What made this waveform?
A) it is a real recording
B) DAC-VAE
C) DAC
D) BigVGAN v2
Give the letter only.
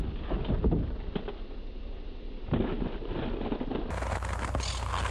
A